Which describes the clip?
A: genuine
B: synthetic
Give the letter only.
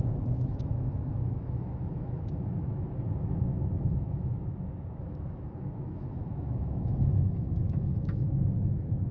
B